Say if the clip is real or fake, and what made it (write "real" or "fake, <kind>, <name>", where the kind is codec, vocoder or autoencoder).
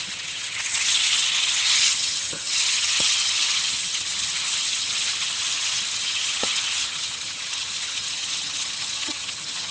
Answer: fake, vocoder, HiFi-GAN